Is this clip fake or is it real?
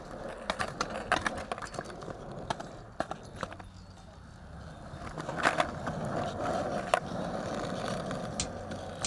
real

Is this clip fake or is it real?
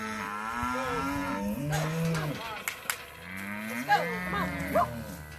real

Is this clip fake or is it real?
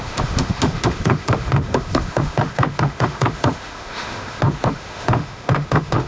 fake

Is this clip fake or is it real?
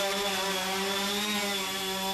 real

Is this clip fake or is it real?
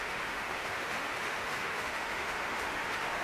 fake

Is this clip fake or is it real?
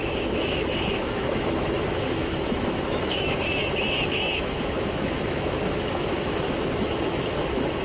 fake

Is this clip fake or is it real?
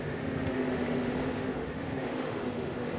fake